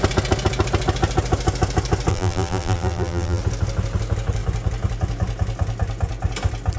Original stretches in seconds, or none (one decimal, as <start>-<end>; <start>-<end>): 0.0-2.1; 3.4-6.8